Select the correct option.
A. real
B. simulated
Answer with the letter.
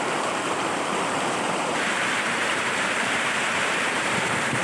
B